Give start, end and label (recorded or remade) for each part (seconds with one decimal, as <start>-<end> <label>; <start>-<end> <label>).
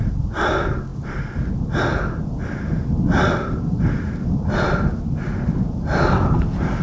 0.0-6.8 recorded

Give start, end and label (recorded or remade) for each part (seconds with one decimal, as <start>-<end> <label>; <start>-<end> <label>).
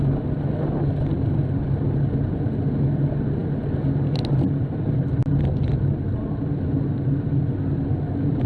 0.0-8.5 recorded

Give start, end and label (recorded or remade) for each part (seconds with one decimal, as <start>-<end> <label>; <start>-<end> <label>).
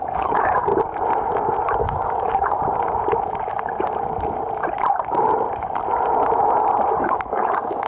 0.0-0.7 remade; 0.7-1.8 recorded; 1.8-2.6 remade; 2.6-7.0 recorded; 7.0-7.9 remade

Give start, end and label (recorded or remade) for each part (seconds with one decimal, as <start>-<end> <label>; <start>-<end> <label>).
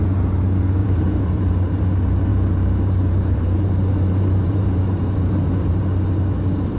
0.0-0.8 recorded; 0.8-1.8 remade; 1.8-2.3 recorded; 2.3-5.8 remade; 5.8-6.8 recorded